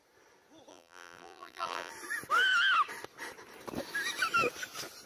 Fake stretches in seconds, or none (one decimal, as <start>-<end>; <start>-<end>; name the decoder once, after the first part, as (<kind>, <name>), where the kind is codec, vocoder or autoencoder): 0.7-1.9 (vocoder, BigVGAN v2)

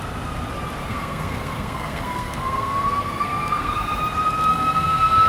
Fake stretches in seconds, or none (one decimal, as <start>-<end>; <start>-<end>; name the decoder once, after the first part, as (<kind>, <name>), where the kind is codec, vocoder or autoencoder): 0.8-4.0 (codec, SNAC); 4.5-5.3